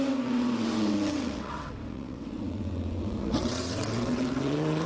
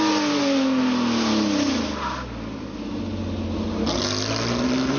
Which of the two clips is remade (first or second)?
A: first